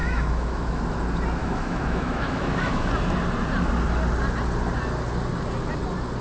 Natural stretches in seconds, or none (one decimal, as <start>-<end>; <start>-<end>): 0.8-1.4; 2.9-6.2